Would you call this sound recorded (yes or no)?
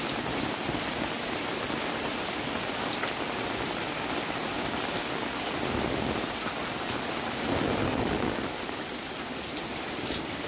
yes